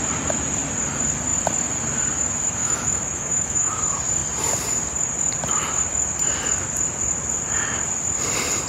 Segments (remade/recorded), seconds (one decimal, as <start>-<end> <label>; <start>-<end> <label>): 0.0-2.6 recorded; 2.6-3.8 remade; 3.8-8.7 recorded